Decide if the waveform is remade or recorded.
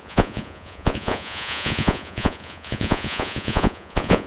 remade